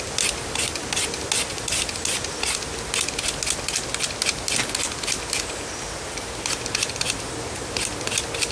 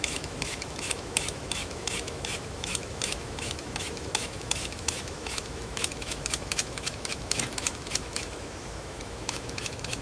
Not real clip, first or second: second